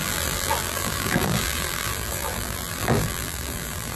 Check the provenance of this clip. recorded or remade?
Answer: remade